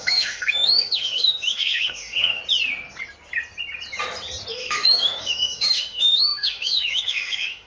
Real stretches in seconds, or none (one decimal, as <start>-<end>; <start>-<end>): 2.4-4.5